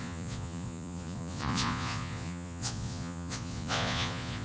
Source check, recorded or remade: remade